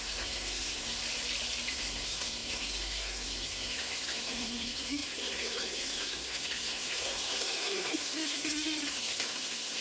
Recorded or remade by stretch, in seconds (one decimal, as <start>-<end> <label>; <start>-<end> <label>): 0.0-1.0 remade; 1.0-1.7 recorded; 1.7-9.8 remade